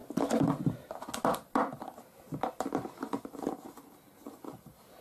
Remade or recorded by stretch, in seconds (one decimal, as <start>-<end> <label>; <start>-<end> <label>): 0.0-5.0 recorded